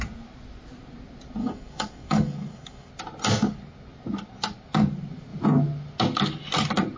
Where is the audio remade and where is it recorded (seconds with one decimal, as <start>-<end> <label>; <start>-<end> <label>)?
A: 0.0-1.4 recorded; 1.4-2.9 remade; 2.9-7.0 recorded